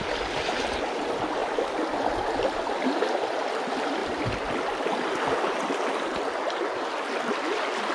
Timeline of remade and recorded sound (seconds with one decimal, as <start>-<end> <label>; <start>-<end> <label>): 0.0-7.9 recorded